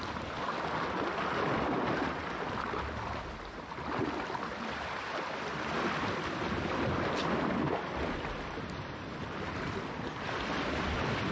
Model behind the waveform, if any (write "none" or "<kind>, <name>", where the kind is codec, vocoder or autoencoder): none